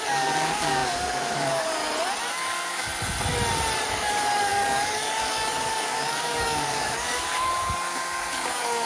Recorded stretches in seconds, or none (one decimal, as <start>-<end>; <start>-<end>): 1.8-2.3; 2.9-3.9